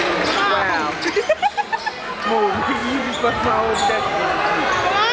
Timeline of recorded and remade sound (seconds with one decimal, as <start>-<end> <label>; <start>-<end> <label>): 0.0-5.1 recorded